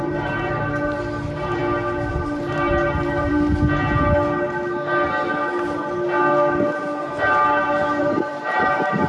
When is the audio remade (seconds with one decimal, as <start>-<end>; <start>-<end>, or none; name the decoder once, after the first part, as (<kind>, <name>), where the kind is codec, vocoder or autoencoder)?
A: 0.0-1.6 (vocoder, BigVGAN v2); 2.1-3.3; 8.0-9.1